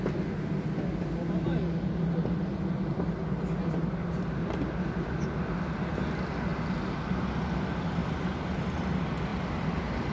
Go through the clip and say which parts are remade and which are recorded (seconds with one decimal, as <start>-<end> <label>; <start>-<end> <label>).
0.0-10.1 recorded